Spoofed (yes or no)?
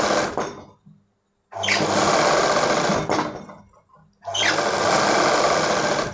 no